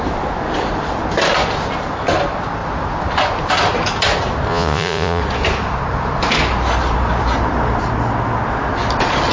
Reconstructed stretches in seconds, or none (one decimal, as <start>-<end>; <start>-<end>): 4.5-5.2